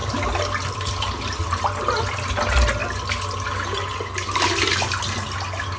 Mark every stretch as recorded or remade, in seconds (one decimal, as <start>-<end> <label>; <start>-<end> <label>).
0.0-5.8 recorded